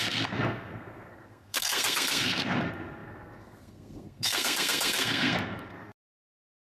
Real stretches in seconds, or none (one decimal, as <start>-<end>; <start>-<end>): none